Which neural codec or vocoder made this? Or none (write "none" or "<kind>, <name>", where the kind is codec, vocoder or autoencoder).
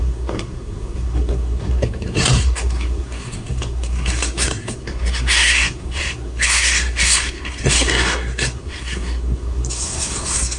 codec, SNAC